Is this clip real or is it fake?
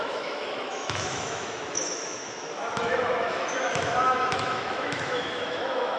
fake